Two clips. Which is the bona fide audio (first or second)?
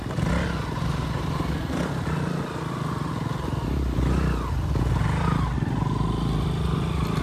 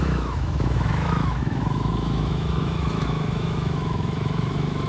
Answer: first